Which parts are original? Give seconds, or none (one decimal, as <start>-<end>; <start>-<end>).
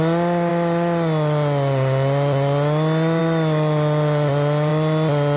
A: 0.0-5.4